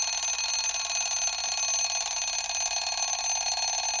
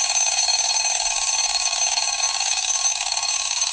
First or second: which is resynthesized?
second